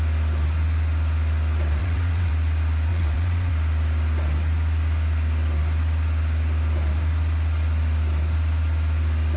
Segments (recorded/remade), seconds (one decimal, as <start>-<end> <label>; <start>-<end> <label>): 0.0-1.8 recorded; 1.8-2.3 remade; 2.3-2.9 recorded; 2.9-3.5 remade; 3.5-9.4 recorded